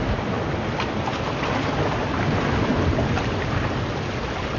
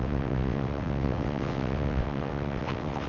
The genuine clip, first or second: first